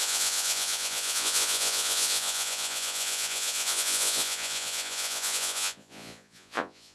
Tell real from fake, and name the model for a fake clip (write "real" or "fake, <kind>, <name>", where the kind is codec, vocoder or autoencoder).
fake, vocoder, Vocos